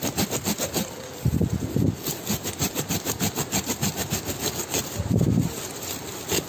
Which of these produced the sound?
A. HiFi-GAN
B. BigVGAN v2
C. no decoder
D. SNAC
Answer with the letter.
C